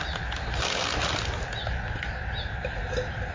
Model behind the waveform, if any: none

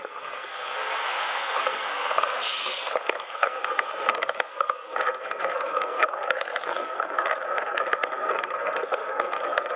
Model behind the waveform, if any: codec, SNAC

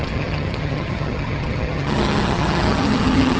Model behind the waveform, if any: vocoder, HiFi-GAN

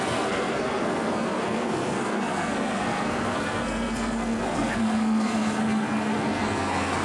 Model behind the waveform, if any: codec, SNAC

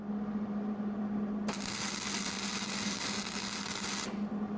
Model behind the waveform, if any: none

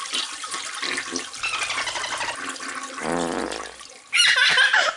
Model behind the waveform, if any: none